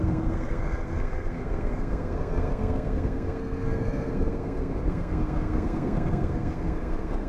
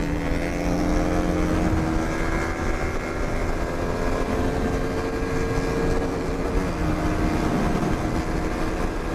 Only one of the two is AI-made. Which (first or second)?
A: first